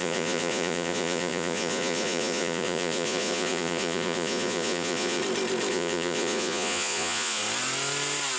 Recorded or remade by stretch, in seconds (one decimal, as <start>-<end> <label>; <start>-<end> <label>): 0.0-5.2 remade; 5.2-5.7 recorded; 5.7-7.4 remade; 7.4-8.4 recorded